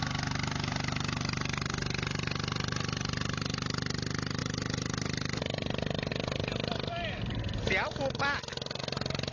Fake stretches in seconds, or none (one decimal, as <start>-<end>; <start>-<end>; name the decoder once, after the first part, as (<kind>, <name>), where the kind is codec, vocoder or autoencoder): none